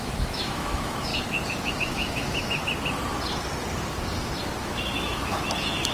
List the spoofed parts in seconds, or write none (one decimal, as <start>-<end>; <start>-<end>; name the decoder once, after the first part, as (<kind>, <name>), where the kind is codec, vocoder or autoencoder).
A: 0.0-1.1 (autoencoder, DAC-VAE); 1.7-2.6; 4.6-5.9